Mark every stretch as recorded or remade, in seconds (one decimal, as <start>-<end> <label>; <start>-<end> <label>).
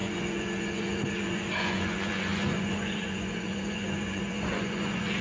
0.0-5.2 remade